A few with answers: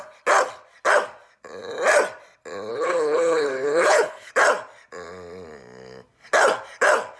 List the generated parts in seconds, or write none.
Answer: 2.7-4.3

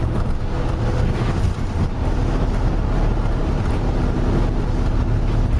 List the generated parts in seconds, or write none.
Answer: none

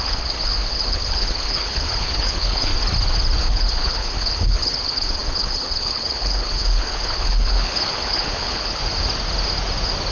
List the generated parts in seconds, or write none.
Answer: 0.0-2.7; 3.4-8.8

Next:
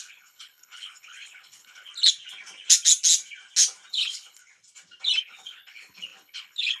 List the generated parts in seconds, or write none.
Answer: 0.0-1.9; 3.9-4.4; 5.2-6.8